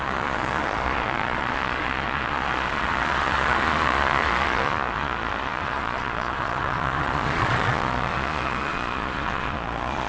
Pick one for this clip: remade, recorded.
remade